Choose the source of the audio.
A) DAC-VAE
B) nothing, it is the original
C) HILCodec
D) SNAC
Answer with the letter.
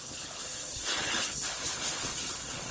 C